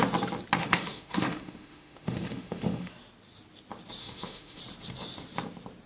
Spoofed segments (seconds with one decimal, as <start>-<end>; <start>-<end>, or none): 0.6-2.9; 4.0-4.6